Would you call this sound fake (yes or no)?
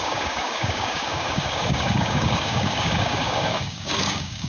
yes